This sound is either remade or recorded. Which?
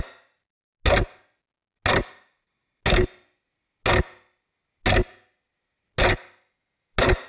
recorded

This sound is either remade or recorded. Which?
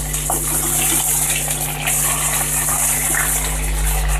recorded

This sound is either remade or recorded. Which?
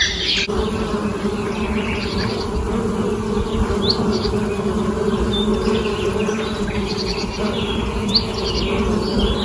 recorded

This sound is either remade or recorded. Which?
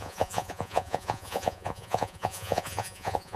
remade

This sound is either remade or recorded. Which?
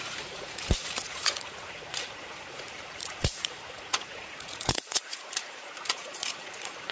remade